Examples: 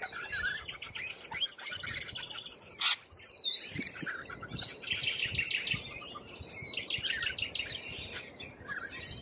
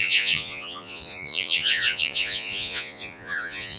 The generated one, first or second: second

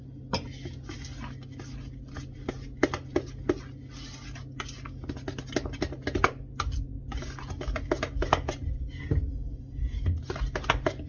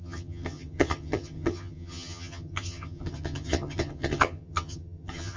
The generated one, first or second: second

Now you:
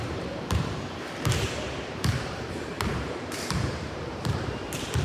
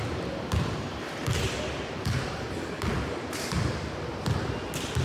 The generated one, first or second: first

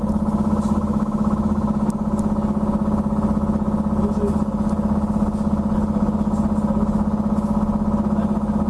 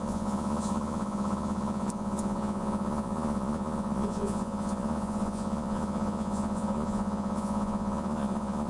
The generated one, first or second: second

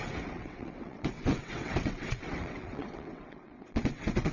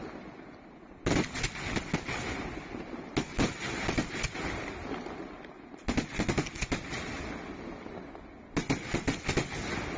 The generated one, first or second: first